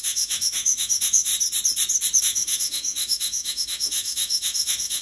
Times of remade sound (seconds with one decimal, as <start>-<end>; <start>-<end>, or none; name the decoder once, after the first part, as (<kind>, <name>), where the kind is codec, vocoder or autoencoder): 0.0-1.3 (autoencoder, DAC-VAE); 2.2-5.0